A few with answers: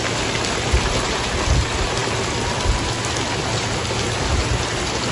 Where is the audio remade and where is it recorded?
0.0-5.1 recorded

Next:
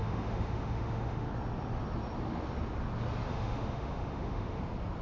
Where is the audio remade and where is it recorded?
0.0-1.3 remade; 1.3-3.3 recorded; 3.3-4.6 remade; 4.6-5.0 recorded

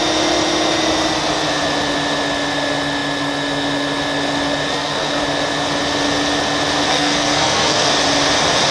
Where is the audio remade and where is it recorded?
0.0-4.7 recorded; 4.7-5.2 remade; 5.2-6.9 recorded; 6.9-7.9 remade; 7.9-8.7 recorded

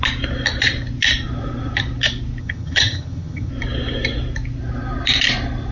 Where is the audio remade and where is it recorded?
0.0-2.4 recorded; 2.4-3.5 remade; 3.5-5.7 recorded

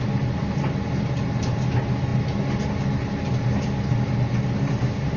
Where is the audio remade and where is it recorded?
0.0-5.2 recorded